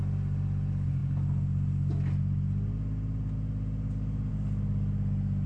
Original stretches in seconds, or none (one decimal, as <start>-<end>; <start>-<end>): 0.0-5.5